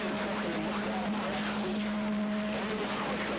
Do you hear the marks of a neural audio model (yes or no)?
no